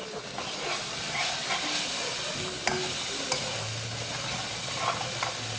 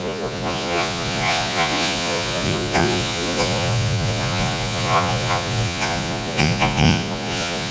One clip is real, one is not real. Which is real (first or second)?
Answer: first